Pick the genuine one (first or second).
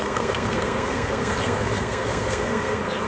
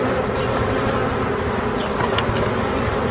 second